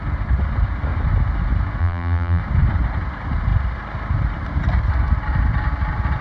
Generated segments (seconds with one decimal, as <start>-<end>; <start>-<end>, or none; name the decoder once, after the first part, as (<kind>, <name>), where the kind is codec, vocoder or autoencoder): 1.8-2.4 (vocoder, BigVGAN v2)